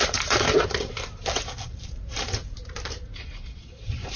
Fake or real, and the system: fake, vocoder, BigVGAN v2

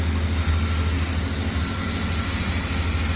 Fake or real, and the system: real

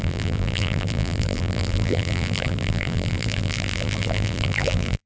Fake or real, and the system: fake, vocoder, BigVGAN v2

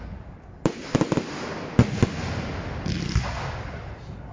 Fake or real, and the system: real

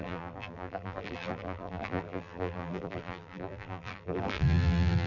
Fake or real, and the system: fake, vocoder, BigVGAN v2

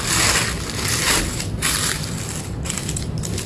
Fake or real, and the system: real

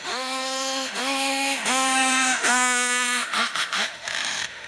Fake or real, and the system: fake, autoencoder, DAC-VAE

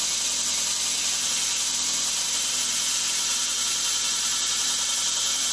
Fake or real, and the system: real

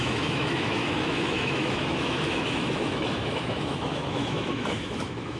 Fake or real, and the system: fake, autoencoder, DAC-VAE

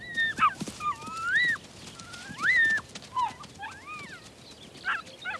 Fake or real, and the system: real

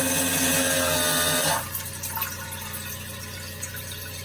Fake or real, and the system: real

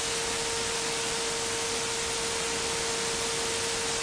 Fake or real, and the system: real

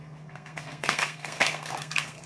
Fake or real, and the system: fake, codec, SNAC